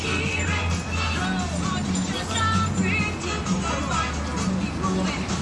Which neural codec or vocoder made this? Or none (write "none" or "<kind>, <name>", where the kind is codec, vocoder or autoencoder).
none